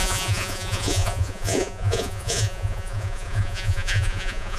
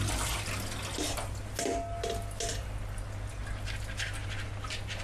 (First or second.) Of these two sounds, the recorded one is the second